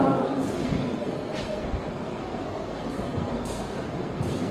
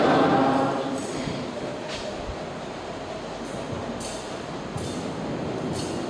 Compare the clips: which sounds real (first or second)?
second